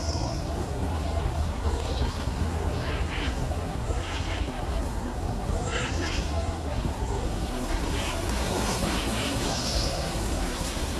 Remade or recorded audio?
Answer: remade